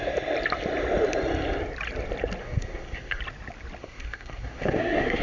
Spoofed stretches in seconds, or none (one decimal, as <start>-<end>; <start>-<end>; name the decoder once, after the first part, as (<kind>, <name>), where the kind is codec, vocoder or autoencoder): 2.4-3.2 (codec, SNAC); 3.8-5.2